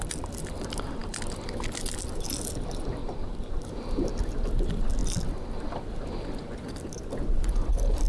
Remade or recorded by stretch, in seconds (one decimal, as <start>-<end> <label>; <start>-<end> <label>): 0.0-3.0 recorded; 3.0-3.7 remade; 3.7-8.1 recorded